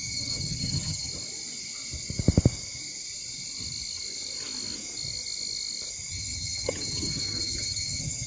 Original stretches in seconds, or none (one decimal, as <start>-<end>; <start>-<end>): 1.1-6.1